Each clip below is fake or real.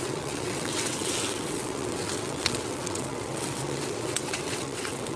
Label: fake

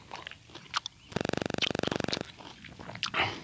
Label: real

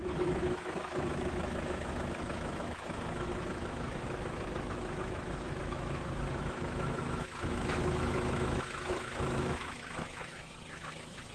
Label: fake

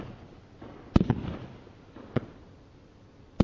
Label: fake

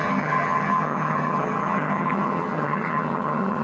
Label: fake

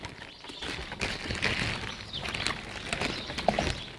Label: real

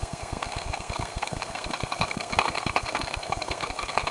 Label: fake